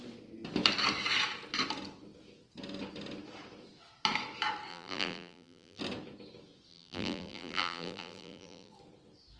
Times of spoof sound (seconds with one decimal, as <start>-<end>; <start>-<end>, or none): 4.7-5.8; 6.7-8.7